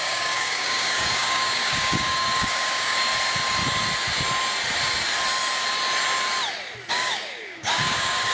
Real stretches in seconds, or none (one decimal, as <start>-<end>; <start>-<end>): 3.1-6.9